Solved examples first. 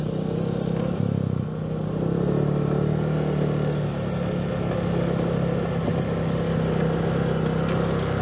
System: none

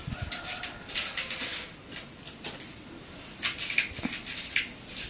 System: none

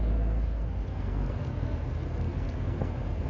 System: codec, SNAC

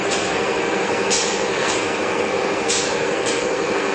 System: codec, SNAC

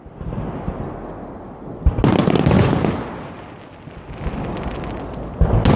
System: none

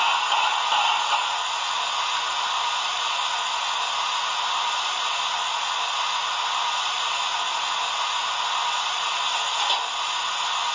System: none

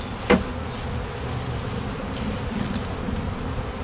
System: none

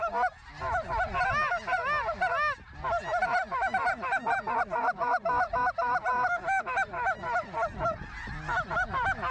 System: none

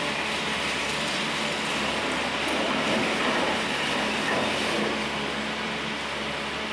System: none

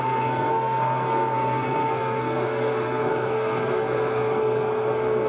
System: codec, SNAC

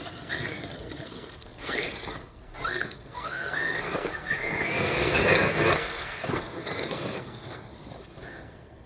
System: codec, SNAC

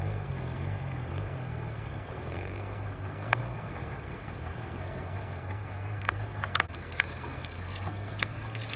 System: codec, SNAC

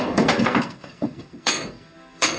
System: codec, SNAC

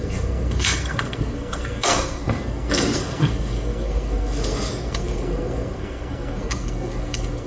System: codec, SNAC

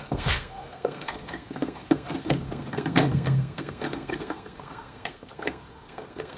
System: codec, SNAC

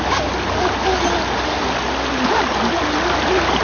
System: none